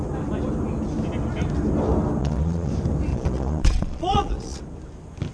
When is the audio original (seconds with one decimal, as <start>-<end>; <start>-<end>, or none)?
0.0-2.2; 2.7-3.1; 4.6-5.3